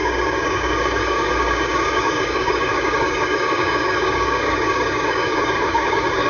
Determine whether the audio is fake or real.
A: fake